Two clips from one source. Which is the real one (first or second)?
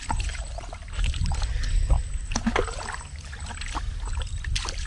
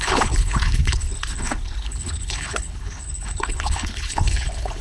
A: first